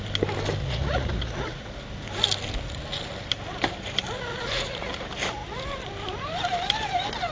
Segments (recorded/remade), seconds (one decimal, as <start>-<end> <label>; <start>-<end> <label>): 0.0-0.6 recorded; 0.6-1.8 remade; 1.8-4.4 recorded; 4.4-4.9 remade; 4.9-7.3 recorded